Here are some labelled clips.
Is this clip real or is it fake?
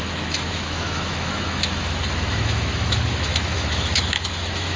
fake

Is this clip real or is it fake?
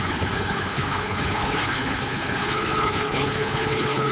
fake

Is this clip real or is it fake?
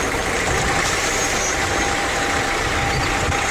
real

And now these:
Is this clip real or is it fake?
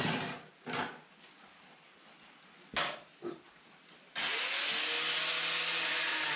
real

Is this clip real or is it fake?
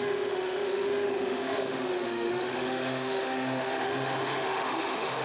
fake